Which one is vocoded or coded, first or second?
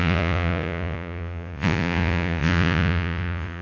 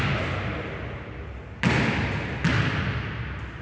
first